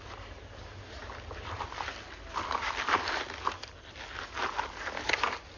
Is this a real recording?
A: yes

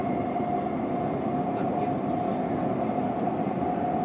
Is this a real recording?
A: yes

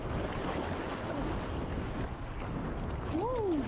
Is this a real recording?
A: yes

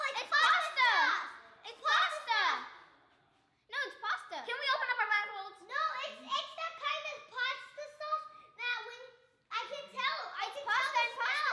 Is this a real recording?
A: yes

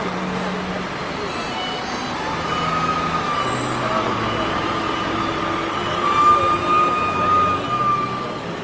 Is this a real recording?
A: yes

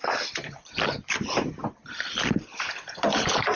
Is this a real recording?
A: yes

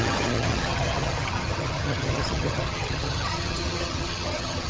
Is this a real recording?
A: no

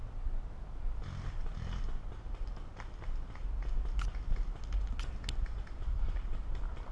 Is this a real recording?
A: yes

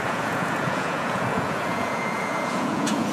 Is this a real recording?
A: no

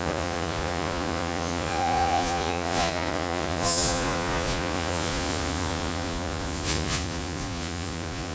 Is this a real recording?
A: no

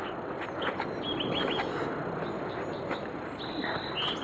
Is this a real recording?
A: yes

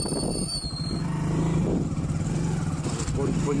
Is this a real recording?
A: yes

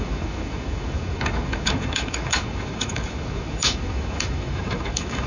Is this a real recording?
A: no